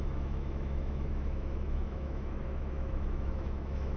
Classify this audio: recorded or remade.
remade